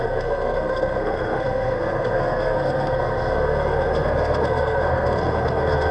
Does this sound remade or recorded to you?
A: remade